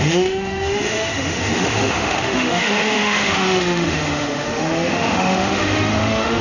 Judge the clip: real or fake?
fake